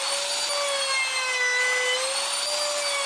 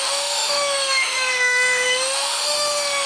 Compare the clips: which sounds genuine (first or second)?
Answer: first